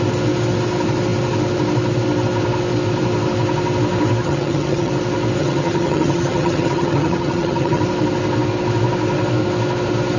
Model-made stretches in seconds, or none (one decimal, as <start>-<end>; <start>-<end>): 4.2-4.9; 5.4-7.8